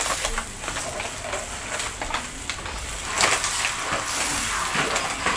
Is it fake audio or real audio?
real